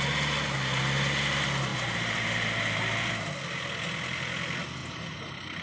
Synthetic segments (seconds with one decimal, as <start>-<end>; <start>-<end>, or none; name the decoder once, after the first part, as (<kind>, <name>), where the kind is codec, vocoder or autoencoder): 1.7-3.1 (vocoder, BigVGAN v2); 4.8-5.6